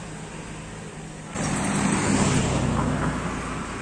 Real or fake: real